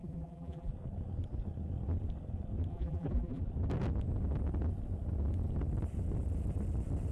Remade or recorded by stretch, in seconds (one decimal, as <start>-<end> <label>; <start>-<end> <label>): 0.0-0.7 remade; 0.7-2.7 recorded; 2.7-3.4 remade; 3.4-7.1 recorded